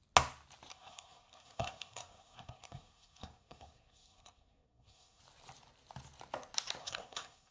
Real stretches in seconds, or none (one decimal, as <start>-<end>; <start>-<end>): 0.0-0.7; 5.2-6.8